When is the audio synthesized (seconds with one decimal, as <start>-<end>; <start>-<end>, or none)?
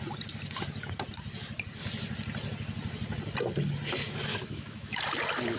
4.3-5.0